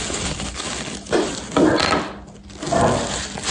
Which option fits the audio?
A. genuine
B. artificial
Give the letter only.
A